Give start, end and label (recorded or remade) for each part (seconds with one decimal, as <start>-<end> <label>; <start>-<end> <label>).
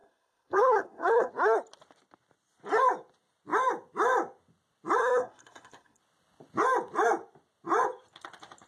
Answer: 0.0-1.3 remade; 1.3-5.0 recorded; 5.0-6.0 remade; 6.0-8.7 recorded